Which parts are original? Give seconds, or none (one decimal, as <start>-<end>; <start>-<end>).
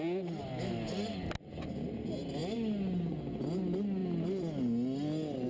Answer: 0.0-5.5